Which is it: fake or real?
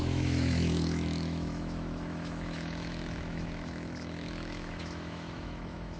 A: fake